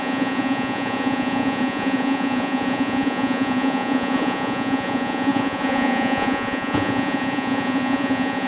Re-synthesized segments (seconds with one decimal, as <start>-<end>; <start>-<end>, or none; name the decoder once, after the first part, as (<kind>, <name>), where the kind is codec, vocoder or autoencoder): 0.0-8.5 (vocoder, Vocos)